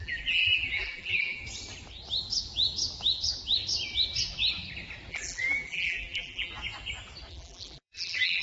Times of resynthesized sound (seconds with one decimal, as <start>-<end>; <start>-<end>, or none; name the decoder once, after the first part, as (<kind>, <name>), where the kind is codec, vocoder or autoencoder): 0.0-1.4 (vocoder, BigVGAN v2); 5.1-6.5; 7.3-8.4